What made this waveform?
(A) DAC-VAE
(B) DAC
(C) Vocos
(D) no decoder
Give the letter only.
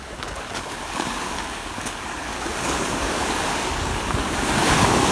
B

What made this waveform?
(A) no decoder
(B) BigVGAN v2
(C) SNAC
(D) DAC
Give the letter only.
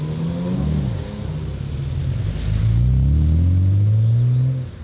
A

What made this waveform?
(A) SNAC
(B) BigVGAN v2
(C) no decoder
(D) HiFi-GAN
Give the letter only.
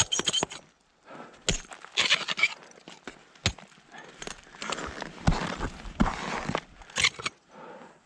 C